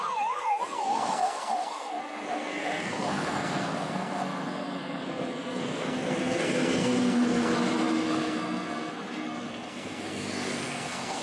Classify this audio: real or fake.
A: fake